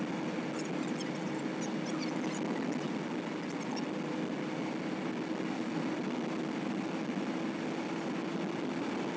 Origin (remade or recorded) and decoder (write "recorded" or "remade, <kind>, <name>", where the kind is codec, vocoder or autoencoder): recorded